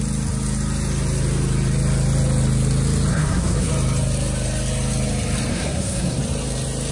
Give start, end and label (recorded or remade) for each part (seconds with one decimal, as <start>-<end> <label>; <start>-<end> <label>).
0.0-3.1 recorded; 3.1-3.7 remade; 3.7-5.5 recorded; 5.5-6.2 remade; 6.2-6.9 recorded

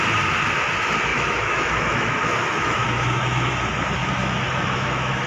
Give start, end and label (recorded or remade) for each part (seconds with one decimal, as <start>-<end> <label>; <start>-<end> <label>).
0.0-1.1 recorded; 1.1-3.5 remade; 3.5-4.0 recorded; 4.0-5.3 remade